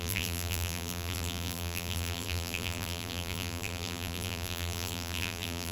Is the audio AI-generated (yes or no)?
yes